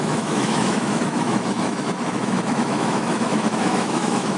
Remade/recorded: remade